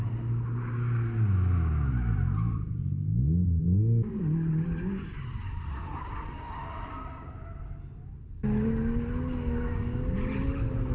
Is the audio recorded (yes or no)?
yes